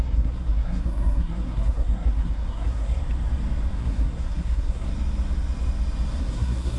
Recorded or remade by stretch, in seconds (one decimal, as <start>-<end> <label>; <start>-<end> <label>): 0.0-3.0 remade; 3.0-3.7 recorded; 3.7-4.9 remade; 4.9-6.2 recorded; 6.2-6.8 remade